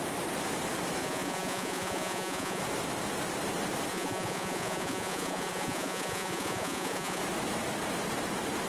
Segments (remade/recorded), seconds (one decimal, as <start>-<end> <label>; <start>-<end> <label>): 0.0-1.0 recorded; 1.0-2.6 remade; 2.6-3.9 recorded; 3.9-7.2 remade; 7.2-8.7 recorded